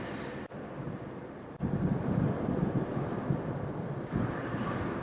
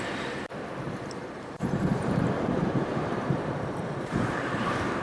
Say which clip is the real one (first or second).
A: first